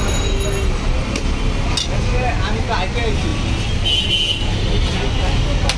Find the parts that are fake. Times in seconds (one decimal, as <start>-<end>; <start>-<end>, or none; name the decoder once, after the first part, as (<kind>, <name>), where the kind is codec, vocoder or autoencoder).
none